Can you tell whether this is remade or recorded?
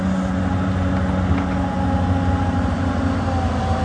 recorded